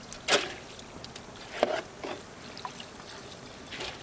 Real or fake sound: real